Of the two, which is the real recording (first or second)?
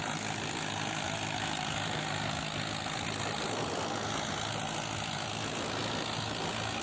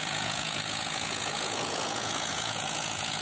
first